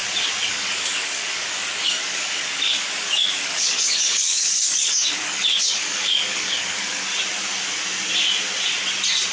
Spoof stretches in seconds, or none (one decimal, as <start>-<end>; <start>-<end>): 0.5-7.1